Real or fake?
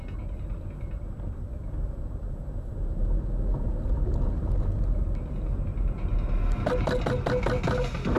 real